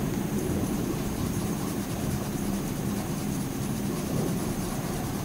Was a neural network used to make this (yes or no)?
yes